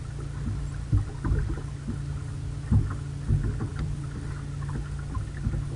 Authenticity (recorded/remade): recorded